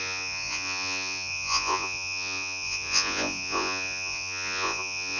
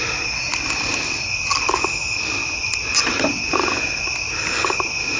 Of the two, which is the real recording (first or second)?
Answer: second